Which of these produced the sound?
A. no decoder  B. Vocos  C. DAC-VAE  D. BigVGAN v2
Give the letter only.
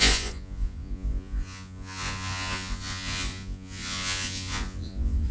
B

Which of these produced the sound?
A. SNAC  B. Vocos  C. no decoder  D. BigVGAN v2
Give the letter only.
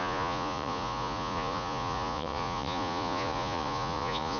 B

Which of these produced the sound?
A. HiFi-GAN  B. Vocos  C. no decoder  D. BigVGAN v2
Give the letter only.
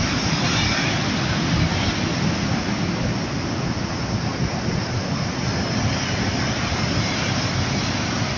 C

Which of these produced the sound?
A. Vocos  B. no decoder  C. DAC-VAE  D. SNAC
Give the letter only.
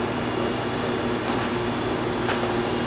B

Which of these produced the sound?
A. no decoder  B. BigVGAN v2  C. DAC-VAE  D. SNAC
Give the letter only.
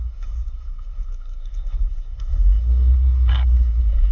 D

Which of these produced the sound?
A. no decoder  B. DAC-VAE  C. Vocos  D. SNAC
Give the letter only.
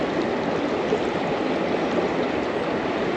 A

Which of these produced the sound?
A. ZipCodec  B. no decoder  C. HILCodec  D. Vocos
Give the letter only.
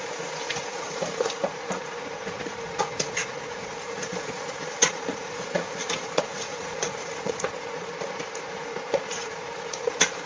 D